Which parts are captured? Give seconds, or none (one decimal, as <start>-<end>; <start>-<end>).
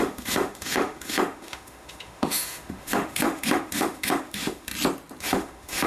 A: 4.7-5.2